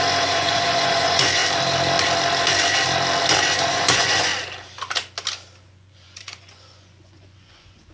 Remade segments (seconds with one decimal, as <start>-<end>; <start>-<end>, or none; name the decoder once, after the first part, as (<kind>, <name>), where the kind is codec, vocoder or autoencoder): 0.0-1.4 (vocoder, Vocos); 3.7-4.3; 5.6-7.9